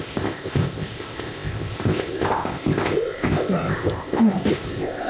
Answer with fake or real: fake